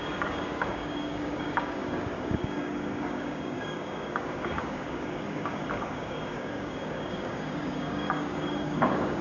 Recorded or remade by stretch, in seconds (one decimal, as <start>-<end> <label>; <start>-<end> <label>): 0.0-9.2 remade